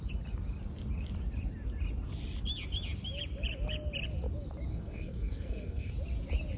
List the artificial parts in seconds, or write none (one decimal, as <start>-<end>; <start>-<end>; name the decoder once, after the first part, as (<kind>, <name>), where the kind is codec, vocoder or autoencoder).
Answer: 4.7-5.9 (codec, SNAC)